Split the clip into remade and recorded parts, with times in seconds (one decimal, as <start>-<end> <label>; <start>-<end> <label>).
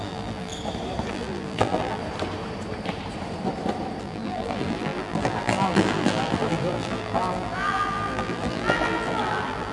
0.0-0.5 remade; 0.5-1.1 recorded; 1.1-2.0 remade; 2.0-4.0 recorded; 4.0-9.7 remade